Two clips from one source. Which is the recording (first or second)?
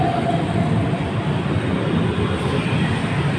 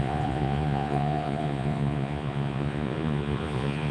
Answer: first